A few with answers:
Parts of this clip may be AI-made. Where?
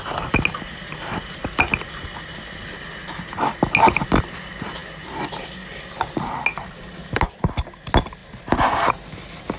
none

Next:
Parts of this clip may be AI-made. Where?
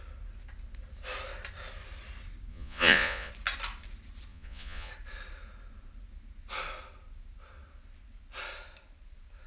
2.5-3.3 (vocoder, Vocos); 4.3-4.9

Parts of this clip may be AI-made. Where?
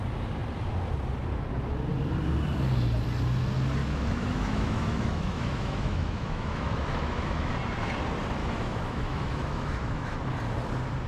3.8-7.5 (autoencoder, DAC-VAE); 8.4-10.2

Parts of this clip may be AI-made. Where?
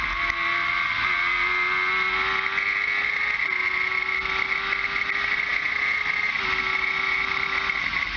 none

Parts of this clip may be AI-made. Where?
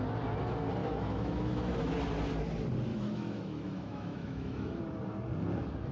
0.8-1.8 (autoencoder, DAC-VAE); 2.9-4.8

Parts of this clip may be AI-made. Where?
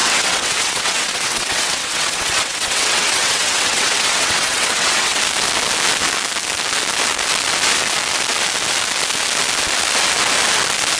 0.0-5.2 (vocoder, WaveNeXt)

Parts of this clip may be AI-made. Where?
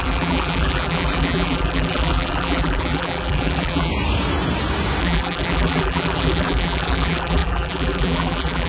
0.0-3.9 (vocoder, BigVGAN v2); 5.0-8.7